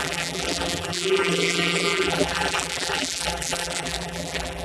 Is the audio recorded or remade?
remade